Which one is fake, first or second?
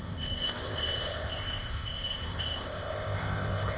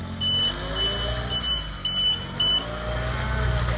first